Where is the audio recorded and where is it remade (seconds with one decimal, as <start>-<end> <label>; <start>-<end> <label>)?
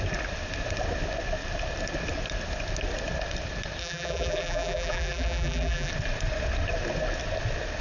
0.0-3.8 recorded; 3.8-5.9 remade; 5.9-7.8 recorded